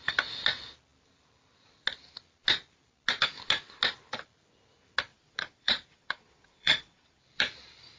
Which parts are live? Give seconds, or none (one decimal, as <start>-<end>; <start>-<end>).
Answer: 0.0-5.1; 7.2-8.0